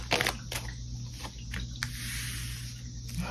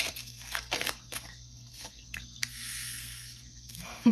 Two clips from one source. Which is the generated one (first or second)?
second